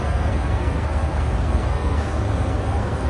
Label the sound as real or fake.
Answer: fake